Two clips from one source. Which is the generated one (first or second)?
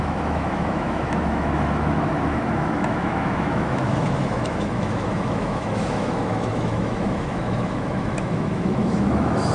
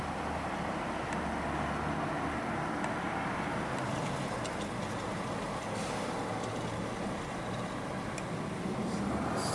first